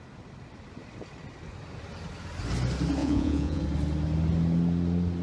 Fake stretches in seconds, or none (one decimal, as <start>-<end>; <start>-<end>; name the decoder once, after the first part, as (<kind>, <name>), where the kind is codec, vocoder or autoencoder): 3.0-3.6 (vocoder, Vocos)